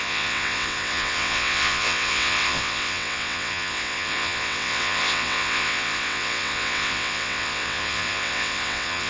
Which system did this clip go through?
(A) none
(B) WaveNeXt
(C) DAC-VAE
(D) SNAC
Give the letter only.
B